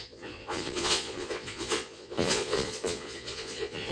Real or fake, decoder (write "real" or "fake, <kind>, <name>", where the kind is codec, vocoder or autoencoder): fake, vocoder, Vocos